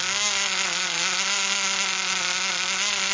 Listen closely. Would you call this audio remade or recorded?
recorded